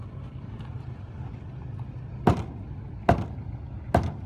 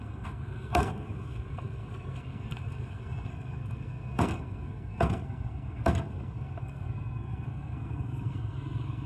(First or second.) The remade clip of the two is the second